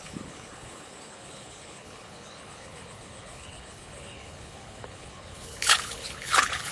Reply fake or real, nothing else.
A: fake